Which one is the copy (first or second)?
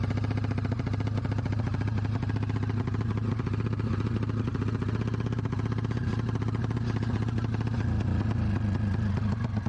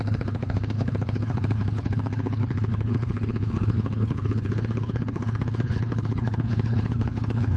second